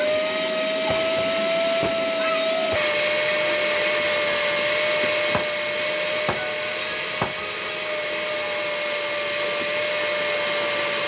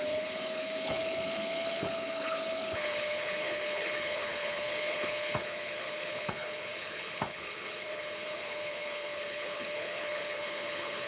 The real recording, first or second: first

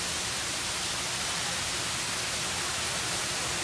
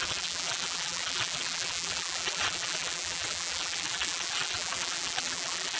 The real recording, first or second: first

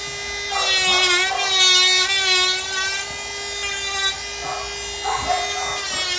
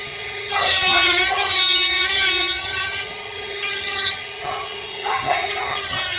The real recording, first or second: first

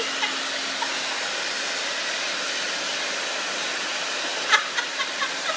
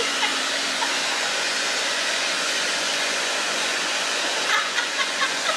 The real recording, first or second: first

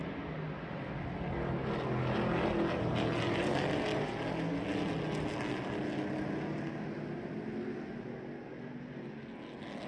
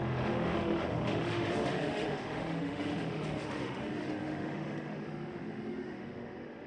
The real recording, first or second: first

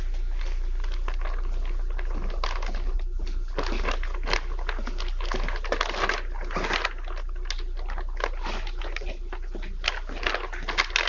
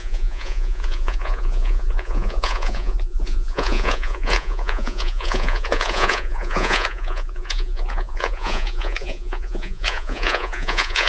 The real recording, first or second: first